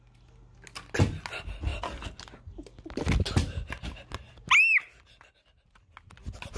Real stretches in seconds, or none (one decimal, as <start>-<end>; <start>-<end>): 0.0-6.6